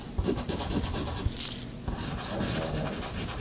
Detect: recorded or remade recorded